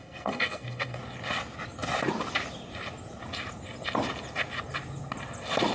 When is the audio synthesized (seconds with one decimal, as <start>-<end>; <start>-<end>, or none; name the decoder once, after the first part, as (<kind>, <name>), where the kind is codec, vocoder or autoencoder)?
0.0-1.0 (codec, SNAC)